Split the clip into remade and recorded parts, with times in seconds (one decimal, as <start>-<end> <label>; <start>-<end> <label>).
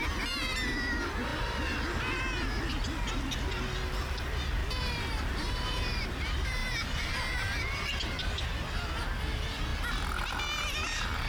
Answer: 0.0-4.6 recorded; 4.6-6.0 remade; 6.0-11.3 recorded